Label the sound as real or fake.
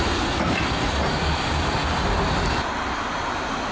real